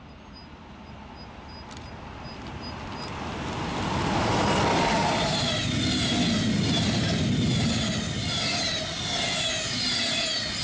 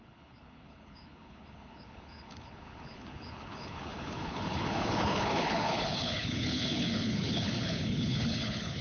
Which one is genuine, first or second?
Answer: first